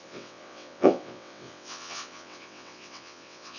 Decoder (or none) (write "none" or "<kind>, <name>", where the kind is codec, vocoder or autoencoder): vocoder, WaveNeXt